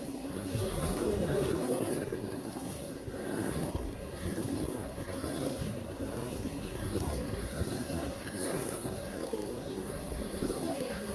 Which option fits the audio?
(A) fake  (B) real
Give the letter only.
A